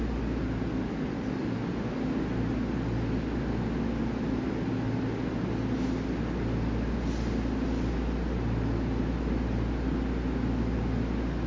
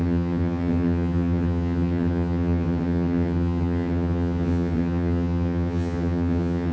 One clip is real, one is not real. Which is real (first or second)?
first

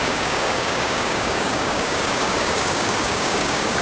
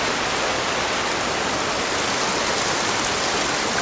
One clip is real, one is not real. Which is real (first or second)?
second